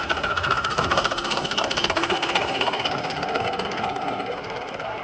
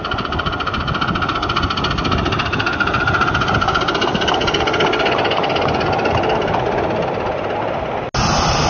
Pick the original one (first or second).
second